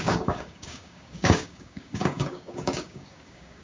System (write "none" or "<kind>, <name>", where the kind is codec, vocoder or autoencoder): codec, DAC